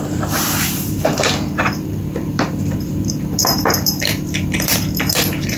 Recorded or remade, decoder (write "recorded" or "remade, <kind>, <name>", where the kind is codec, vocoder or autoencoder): remade, vocoder, BigVGAN v2